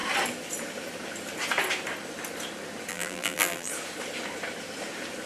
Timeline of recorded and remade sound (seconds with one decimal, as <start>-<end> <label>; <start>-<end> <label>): 0.0-2.9 recorded; 2.9-3.7 remade; 3.7-5.3 recorded